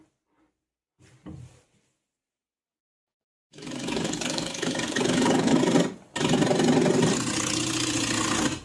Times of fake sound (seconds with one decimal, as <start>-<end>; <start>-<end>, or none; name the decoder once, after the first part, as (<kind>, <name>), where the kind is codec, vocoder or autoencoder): 2.8-5.6 (codec, DAC)